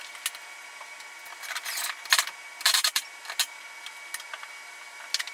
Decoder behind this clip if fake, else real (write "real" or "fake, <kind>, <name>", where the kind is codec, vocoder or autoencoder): real